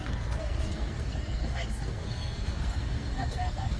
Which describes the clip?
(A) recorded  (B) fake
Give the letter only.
B